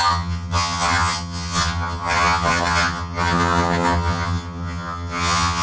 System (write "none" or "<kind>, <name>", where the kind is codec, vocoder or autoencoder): vocoder, HiFi-GAN